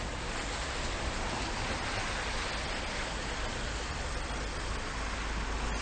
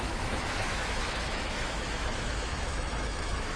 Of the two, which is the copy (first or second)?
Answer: second